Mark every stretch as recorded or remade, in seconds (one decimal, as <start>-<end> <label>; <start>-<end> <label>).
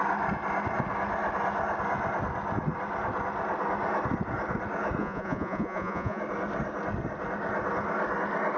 0.0-5.0 recorded; 5.0-6.2 remade; 6.2-8.6 recorded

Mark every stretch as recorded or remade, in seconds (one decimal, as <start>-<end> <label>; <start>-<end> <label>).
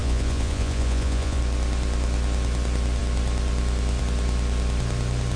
0.0-1.4 remade; 1.4-5.4 recorded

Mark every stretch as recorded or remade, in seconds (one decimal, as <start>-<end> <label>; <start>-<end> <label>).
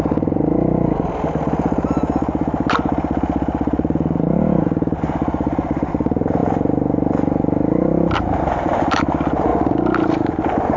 0.0-10.8 recorded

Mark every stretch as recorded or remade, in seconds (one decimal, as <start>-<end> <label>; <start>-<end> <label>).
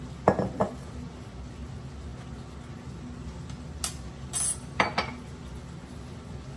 0.0-6.6 recorded